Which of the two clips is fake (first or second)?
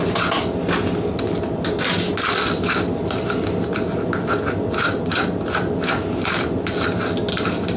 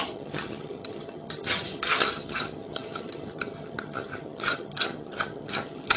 second